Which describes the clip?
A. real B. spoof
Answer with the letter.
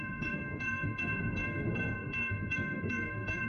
B